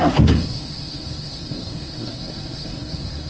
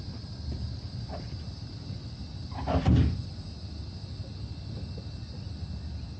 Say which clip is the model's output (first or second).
first